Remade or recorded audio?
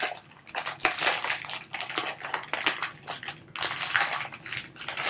recorded